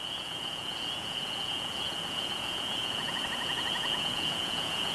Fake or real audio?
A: fake